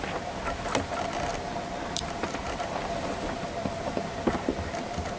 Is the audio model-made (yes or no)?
no